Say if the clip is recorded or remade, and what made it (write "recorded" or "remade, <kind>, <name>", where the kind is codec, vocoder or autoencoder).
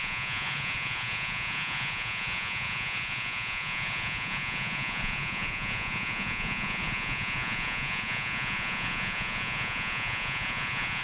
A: remade, vocoder, Vocos